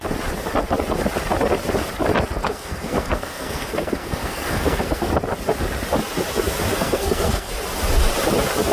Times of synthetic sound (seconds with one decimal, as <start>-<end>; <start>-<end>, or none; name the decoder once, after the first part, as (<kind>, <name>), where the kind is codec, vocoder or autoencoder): 2.4-5.1 (codec, SNAC); 6.7-7.5